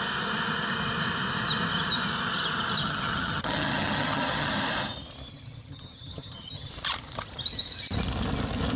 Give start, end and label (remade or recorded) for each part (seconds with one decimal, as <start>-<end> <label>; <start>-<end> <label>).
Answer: 0.0-2.8 recorded; 2.8-4.6 remade; 4.6-5.3 recorded; 5.3-6.7 remade; 6.7-8.8 recorded